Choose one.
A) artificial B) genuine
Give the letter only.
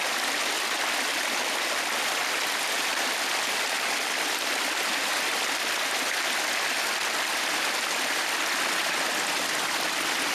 B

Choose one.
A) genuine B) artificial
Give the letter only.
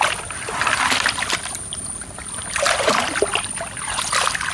A